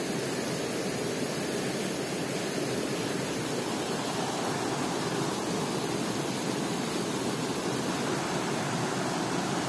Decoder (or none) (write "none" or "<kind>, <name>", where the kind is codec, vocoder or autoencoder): none